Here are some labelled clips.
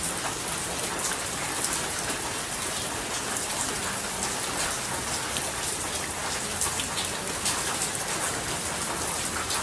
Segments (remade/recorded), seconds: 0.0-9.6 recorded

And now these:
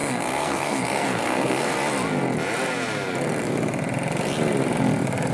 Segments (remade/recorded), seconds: 0.0-1.7 remade; 1.7-5.3 recorded

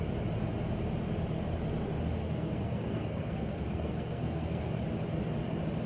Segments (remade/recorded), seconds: 0.0-2.2 recorded; 2.2-4.8 remade; 4.8-5.9 recorded

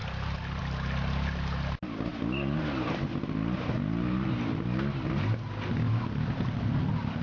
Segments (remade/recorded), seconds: 0.0-7.2 recorded